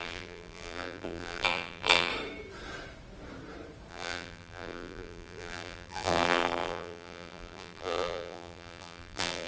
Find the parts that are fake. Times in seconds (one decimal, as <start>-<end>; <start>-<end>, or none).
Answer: 0.0-2.1; 3.9-9.5